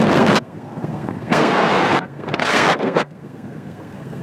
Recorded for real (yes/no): no